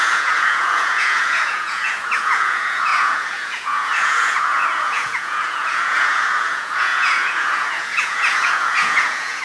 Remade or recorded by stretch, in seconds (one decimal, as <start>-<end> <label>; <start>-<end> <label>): 0.0-9.4 remade